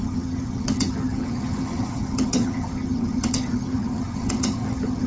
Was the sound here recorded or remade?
remade